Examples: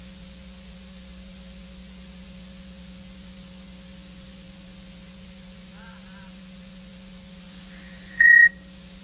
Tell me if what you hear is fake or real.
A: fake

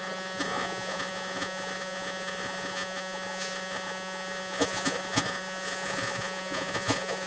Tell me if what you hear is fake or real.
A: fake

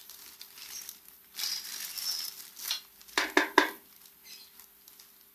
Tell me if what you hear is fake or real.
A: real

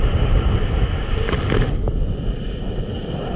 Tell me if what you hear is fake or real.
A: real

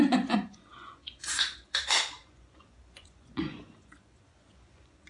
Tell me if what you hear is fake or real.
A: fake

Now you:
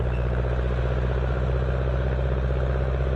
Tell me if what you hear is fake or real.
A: real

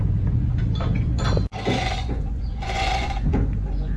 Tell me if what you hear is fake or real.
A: fake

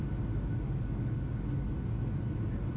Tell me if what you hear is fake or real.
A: real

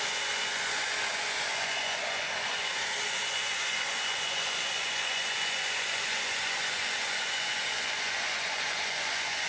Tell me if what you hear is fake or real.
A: fake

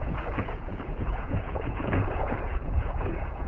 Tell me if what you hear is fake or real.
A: fake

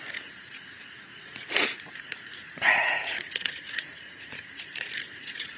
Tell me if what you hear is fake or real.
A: fake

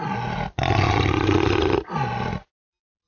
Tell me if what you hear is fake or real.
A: real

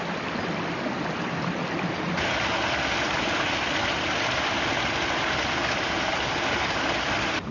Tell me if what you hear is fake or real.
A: real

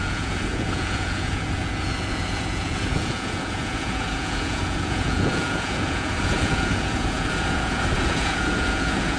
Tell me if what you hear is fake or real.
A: fake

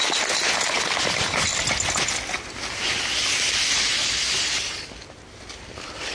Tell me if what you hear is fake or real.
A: real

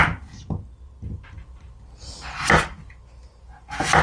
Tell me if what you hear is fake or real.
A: real